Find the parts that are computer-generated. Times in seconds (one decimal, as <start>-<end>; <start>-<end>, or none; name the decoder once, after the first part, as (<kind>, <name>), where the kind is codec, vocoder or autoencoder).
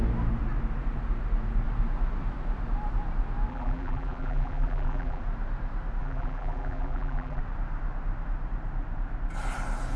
3.5-5.2 (vocoder, BigVGAN v2); 6.0-7.4